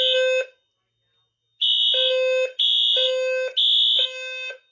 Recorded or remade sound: recorded